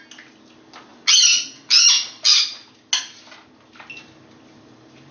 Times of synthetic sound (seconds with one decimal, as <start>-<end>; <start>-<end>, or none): none